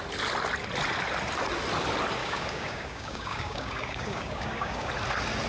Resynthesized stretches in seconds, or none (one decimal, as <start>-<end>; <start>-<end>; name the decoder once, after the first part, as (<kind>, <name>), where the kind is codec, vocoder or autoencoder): 2.2-4.9 (codec, DAC)